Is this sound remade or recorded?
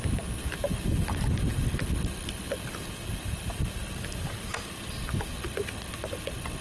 recorded